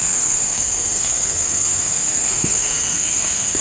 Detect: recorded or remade remade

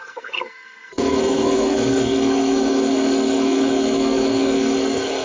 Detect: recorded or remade remade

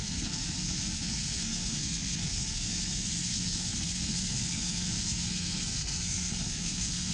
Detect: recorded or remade remade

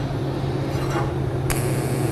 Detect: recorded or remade recorded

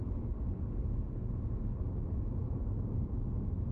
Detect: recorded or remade recorded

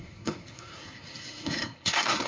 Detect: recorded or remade remade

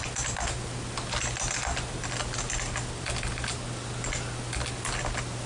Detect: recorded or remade recorded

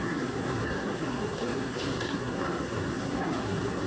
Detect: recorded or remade remade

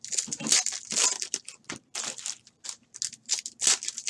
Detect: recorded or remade recorded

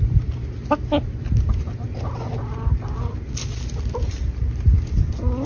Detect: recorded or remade recorded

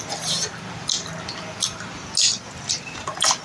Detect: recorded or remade recorded